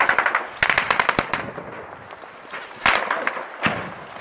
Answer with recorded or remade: recorded